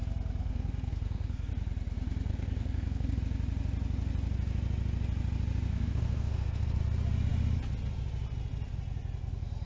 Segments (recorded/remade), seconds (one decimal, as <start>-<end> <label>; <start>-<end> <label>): 0.0-0.4 recorded; 0.4-1.5 remade; 1.5-2.3 recorded; 2.3-3.2 remade; 3.2-5.7 recorded; 5.7-6.8 remade; 6.8-9.7 recorded